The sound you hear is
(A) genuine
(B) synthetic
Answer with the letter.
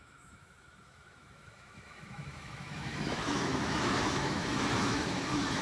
B